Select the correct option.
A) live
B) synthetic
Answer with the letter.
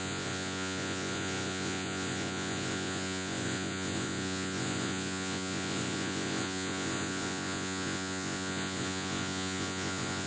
B